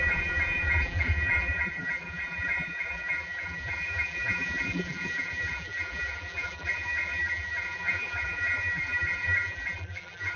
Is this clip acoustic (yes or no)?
no